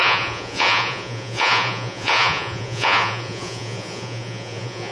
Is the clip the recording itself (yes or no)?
no